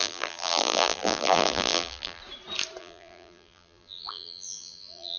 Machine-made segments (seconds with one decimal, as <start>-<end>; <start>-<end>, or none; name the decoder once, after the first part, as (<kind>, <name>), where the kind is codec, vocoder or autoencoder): 0.0-2.2 (vocoder, BigVGAN v2); 2.8-5.2